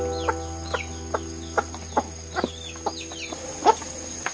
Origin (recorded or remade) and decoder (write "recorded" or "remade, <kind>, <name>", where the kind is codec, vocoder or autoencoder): recorded